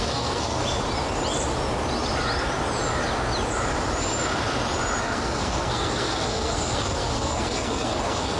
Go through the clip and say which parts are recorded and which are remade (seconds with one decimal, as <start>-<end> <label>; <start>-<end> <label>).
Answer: 0.0-0.6 remade; 0.6-5.0 recorded; 5.0-8.4 remade

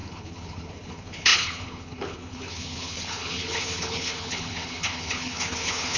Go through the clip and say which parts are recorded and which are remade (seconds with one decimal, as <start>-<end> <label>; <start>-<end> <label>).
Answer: 0.0-6.0 remade

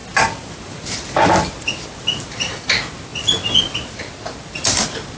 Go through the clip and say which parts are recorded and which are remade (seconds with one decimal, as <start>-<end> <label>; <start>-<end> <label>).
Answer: 0.0-2.6 remade; 2.6-5.2 recorded

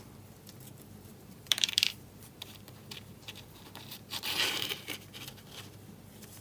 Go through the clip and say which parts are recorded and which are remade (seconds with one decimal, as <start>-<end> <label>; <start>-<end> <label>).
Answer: 0.0-1.1 recorded; 1.1-4.9 remade; 4.9-6.4 recorded

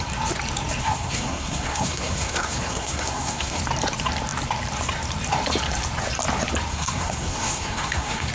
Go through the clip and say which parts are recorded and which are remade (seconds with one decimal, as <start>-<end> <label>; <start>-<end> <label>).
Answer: 0.0-0.8 recorded; 0.8-3.6 remade; 3.6-6.7 recorded; 6.7-8.3 remade

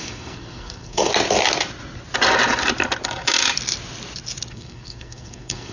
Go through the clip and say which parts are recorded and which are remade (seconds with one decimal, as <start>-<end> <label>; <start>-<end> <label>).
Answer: 0.0-1.1 remade; 1.1-4.5 recorded; 4.5-5.7 remade

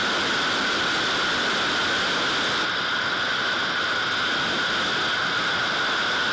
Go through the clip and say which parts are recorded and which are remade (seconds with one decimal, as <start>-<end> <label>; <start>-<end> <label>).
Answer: 0.0-6.3 recorded

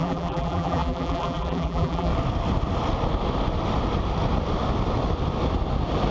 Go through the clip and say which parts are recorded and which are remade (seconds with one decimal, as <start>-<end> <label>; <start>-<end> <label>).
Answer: 0.0-2.1 remade; 2.1-6.1 recorded